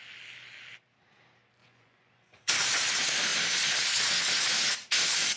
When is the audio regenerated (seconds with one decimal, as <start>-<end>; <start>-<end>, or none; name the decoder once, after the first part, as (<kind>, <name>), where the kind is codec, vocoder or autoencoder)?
1.6-2.5 (vocoder, Vocos)